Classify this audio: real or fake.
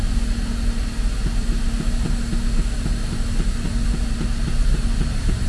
real